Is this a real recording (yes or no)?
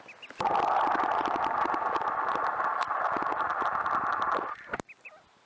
yes